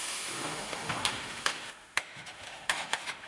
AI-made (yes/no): yes